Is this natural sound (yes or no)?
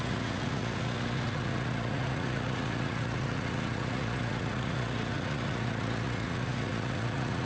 no